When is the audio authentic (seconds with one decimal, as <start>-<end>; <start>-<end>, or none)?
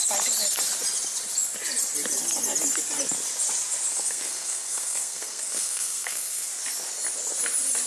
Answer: 0.0-3.9; 6.5-7.9